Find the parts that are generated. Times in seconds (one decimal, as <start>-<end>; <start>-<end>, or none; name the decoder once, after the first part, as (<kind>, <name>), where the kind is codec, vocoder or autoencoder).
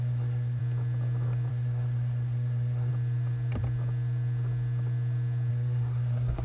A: 0.0-0.6 (codec, SNAC); 1.5-2.9; 5.5-6.4